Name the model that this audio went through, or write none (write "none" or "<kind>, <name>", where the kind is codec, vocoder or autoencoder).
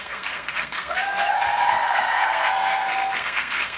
codec, SNAC